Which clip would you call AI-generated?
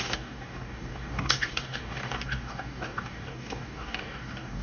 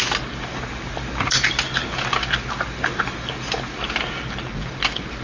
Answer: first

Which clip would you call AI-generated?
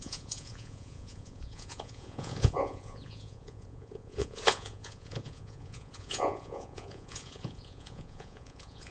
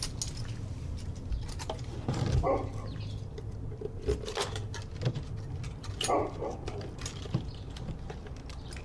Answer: first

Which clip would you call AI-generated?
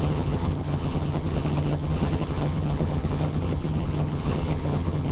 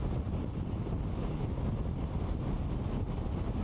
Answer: first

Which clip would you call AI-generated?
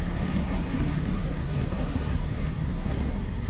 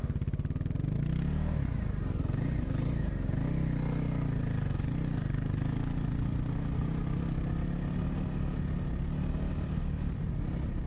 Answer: first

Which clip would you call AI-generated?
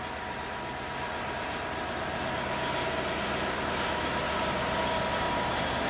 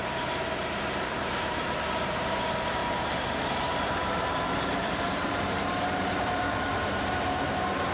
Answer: second